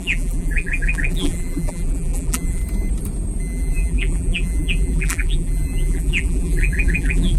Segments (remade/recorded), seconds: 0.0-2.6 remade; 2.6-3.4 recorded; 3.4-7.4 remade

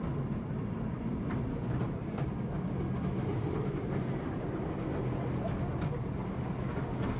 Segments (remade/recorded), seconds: 0.0-3.3 recorded; 3.3-4.5 remade; 4.5-7.2 recorded

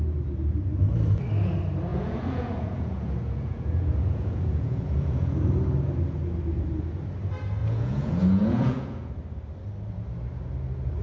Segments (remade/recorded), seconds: 0.0-1.9 recorded; 1.9-5.3 remade; 5.3-7.6 recorded; 7.6-9.1 remade; 9.1-11.0 recorded

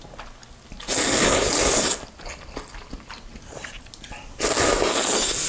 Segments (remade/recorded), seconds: 0.0-5.5 recorded